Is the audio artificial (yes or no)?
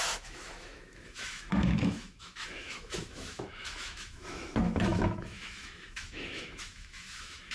yes